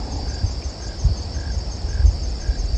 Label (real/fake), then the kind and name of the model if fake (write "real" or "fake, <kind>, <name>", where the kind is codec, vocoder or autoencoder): real